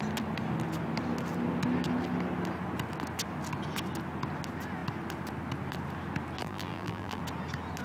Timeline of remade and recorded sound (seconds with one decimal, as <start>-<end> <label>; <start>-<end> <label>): 0.0-6.4 recorded; 6.4-7.2 remade; 7.2-7.8 recorded